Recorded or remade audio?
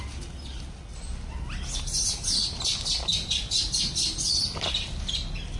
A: recorded